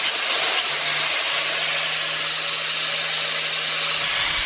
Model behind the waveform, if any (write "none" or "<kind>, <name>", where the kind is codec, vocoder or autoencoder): none